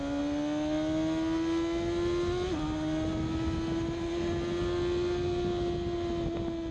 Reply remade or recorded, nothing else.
recorded